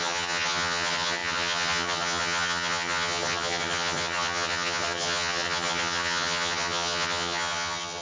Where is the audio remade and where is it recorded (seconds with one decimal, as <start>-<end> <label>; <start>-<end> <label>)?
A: 0.0-8.0 remade